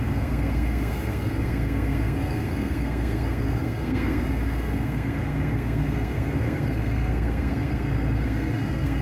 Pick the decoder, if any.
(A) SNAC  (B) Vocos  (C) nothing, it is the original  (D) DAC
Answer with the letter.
A